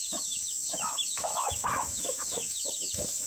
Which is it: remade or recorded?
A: remade